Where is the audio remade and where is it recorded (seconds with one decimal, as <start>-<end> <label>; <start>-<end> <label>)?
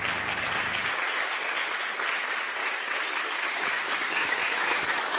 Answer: 0.0-2.6 recorded; 2.6-5.2 remade